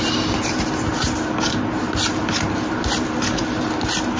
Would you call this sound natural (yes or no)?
yes